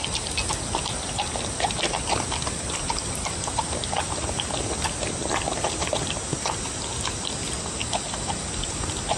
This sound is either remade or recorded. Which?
recorded